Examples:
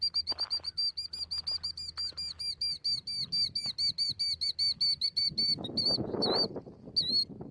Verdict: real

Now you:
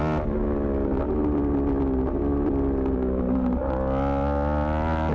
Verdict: real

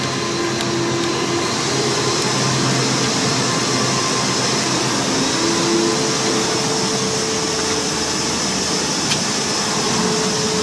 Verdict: real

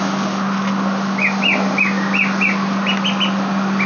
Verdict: real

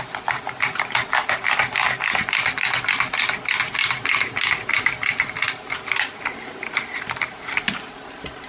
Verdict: real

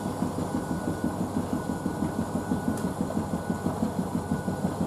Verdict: real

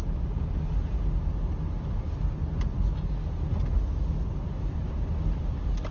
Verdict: real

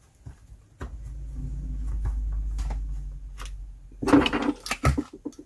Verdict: real